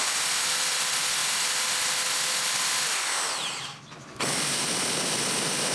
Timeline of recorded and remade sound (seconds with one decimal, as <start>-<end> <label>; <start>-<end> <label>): 0.0-5.7 recorded